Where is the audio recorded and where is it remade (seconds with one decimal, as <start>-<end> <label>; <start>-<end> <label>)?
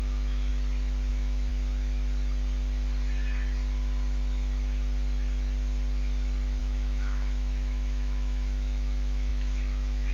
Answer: 0.0-0.5 remade; 0.5-1.1 recorded; 1.1-1.5 remade; 1.5-6.6 recorded; 6.6-10.1 remade